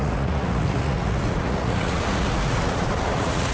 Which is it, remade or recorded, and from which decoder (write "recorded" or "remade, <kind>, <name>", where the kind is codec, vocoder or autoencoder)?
remade, vocoder, Vocos